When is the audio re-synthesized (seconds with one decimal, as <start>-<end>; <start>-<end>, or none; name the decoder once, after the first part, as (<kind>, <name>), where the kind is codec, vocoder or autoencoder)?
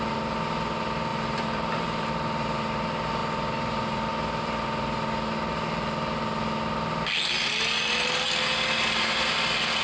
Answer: 1.1-2.1 (vocoder, BigVGAN v2)